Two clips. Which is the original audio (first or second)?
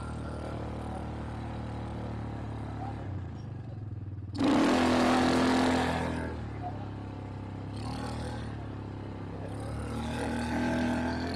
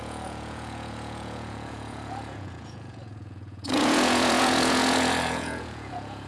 first